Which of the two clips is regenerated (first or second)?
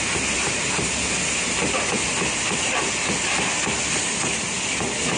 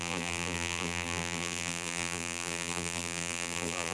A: second